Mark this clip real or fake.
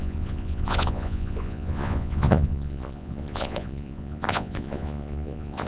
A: fake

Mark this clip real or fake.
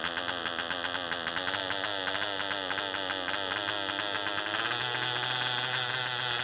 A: real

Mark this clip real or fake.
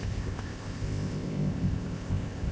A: fake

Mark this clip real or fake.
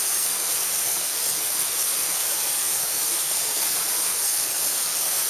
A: fake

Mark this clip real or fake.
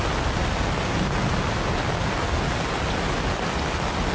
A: real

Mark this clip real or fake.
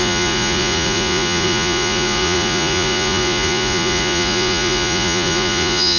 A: fake